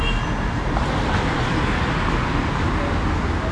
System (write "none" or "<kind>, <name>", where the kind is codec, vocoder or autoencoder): none